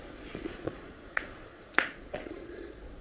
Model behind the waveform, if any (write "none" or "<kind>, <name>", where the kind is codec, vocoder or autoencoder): vocoder, Vocos